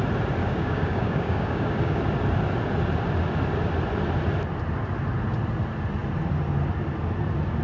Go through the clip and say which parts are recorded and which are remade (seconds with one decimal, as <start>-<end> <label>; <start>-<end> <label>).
0.0-0.4 recorded; 0.4-2.0 remade; 2.0-7.6 recorded

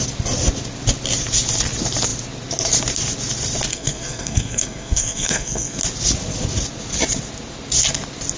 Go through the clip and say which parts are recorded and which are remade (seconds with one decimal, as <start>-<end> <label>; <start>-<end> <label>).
0.0-3.7 recorded; 3.7-5.8 remade; 5.8-8.4 recorded

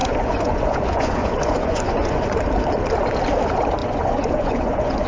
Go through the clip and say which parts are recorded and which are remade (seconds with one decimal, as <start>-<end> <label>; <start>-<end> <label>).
0.0-2.4 remade; 2.4-3.8 recorded; 3.8-5.1 remade

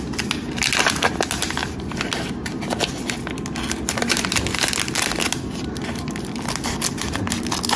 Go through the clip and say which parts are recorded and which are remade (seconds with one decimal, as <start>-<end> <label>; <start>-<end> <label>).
0.0-7.8 recorded

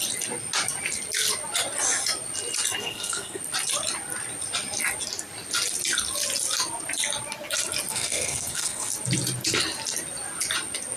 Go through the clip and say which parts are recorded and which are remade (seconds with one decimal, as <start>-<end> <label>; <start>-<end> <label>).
0.0-2.8 recorded; 2.8-3.4 remade; 3.4-7.9 recorded; 7.9-8.9 remade; 8.9-11.0 recorded